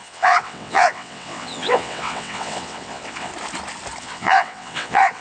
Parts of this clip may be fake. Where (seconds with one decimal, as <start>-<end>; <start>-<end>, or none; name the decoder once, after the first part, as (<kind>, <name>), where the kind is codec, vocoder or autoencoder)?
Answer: 0.0-3.3 (vocoder, WaveNeXt); 4.0-5.2